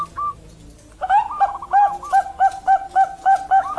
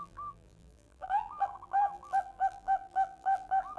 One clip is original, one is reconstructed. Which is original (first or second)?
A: first